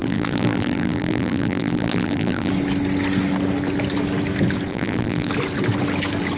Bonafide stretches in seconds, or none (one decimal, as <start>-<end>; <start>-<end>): 2.5-4.7; 5.3-6.4